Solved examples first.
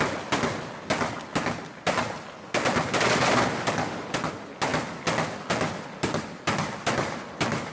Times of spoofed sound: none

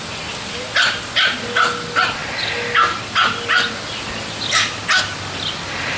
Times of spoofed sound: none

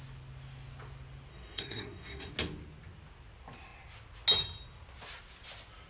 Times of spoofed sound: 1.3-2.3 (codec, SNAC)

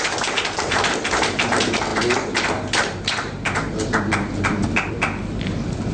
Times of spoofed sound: none

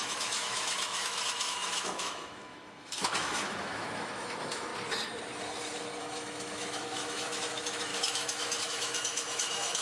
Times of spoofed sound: 0.0-4.7 (autoencoder, DAC-VAE); 6.0-9.8

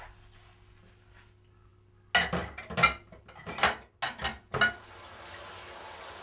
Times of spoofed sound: none

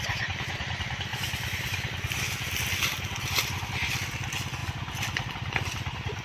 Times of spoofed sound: none